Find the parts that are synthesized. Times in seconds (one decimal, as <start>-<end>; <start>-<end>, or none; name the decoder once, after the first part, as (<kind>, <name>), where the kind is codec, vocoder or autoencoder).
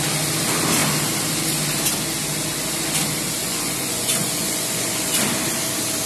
3.4-5.1 (vocoder, Vocos)